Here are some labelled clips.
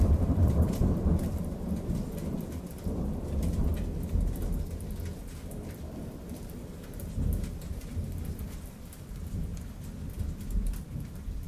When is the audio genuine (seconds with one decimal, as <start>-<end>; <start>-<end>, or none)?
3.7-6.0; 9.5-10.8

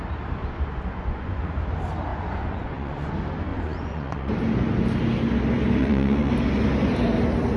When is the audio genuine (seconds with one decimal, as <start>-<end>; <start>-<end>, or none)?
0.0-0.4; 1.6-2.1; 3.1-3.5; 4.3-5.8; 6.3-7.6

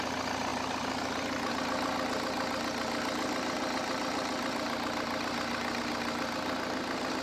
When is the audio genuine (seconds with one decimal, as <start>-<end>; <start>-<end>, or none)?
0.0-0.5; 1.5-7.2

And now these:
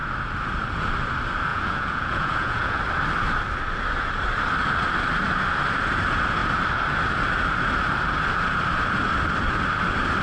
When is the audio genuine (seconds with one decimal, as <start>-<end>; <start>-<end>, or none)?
0.0-1.5; 2.8-10.2